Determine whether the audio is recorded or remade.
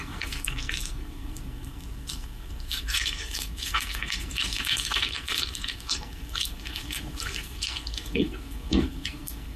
remade